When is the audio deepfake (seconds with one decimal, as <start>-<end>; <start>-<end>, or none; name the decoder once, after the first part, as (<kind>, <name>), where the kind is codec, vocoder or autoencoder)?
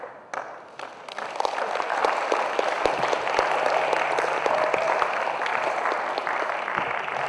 none